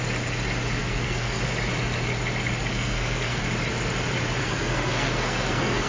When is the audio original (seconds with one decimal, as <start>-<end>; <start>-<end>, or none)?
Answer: 0.0-0.8; 1.4-2.7; 3.4-4.4